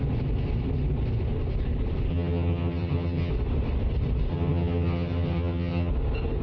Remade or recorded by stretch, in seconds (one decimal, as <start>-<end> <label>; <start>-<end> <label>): 0.0-2.1 recorded; 2.1-3.3 remade; 3.3-4.3 recorded; 4.3-5.9 remade; 5.9-6.4 recorded